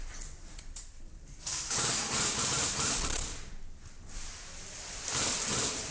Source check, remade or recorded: remade